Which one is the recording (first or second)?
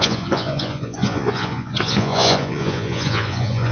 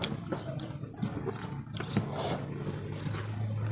second